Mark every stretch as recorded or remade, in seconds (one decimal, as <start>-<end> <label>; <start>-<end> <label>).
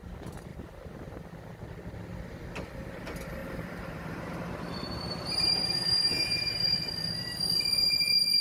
0.0-3.4 recorded; 3.4-6.6 remade; 6.6-8.4 recorded